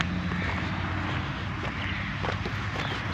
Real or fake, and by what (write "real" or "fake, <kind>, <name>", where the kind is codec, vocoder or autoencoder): real